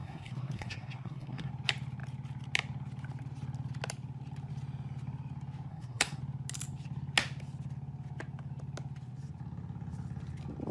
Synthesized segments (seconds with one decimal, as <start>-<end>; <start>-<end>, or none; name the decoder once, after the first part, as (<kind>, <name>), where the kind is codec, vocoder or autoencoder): 0.0-1.5 (codec, SNAC); 5.7-6.2